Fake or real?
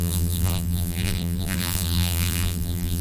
fake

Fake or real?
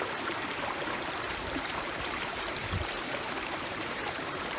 fake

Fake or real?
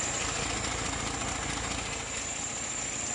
real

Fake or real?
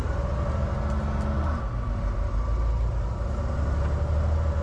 real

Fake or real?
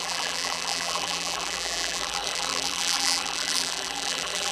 fake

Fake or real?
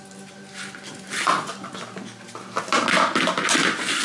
real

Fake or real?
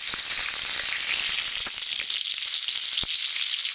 real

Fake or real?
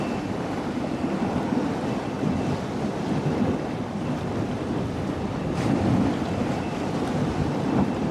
fake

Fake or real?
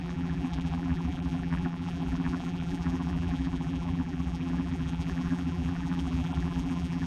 fake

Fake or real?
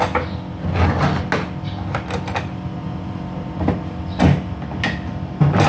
real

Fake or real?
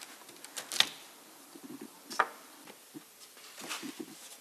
real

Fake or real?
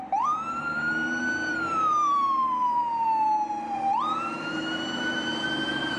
fake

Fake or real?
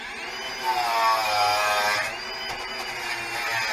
real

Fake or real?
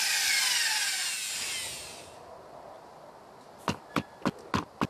real